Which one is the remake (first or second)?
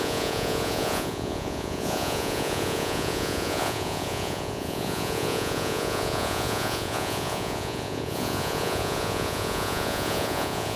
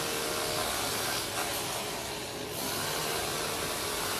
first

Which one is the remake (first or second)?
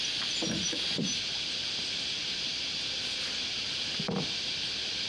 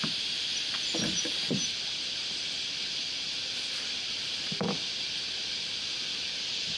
second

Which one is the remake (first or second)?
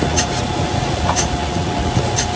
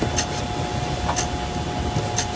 first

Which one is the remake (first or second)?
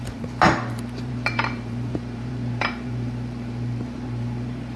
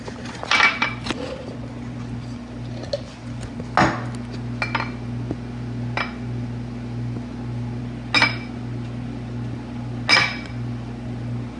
first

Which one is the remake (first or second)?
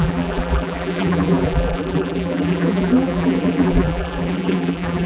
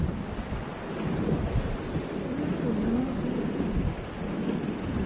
first